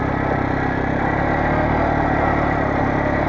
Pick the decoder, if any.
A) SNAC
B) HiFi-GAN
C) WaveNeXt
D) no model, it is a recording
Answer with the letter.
D